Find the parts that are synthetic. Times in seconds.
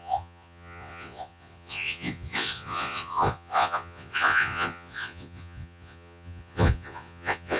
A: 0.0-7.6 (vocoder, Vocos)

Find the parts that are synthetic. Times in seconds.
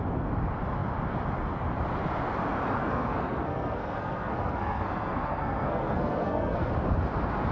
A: 2.8-6.7 (codec, SNAC)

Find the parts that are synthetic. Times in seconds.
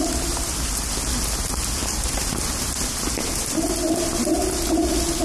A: none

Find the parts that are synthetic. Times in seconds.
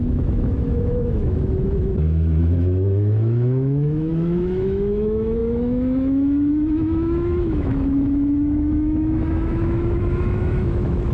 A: 0.0-11.1 (autoencoder, DAC-VAE)